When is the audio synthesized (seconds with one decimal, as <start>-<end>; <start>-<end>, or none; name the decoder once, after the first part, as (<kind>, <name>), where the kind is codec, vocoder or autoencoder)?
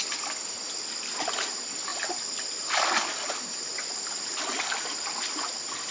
none